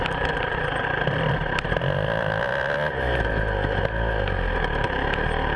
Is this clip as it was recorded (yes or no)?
yes